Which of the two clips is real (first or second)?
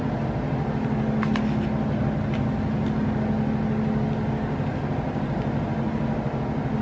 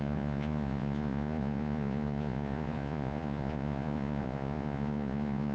first